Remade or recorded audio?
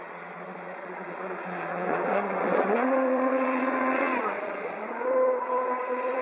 remade